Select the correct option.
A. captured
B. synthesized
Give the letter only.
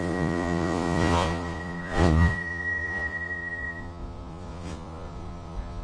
B